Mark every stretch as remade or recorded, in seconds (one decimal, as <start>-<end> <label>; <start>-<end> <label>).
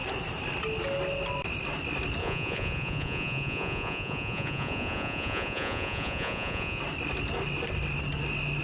0.0-2.2 recorded; 2.2-6.8 remade; 6.8-8.6 recorded